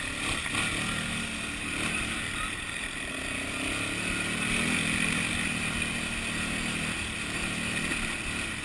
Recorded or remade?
recorded